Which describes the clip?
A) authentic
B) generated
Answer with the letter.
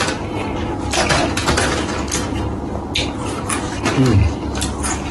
A